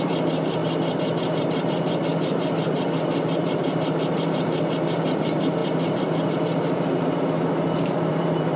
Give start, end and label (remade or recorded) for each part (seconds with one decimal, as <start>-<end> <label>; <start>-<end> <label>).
0.0-0.6 remade; 0.6-1.4 recorded; 1.4-8.6 remade